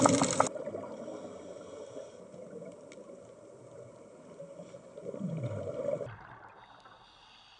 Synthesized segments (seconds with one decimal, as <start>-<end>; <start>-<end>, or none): none